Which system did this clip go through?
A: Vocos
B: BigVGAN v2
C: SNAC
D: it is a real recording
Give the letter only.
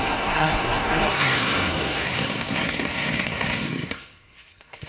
C